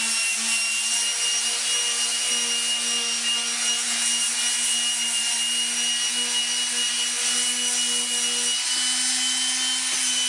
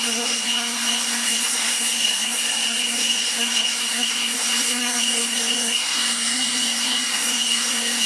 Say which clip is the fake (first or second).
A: second